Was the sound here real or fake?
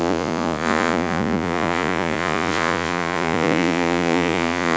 fake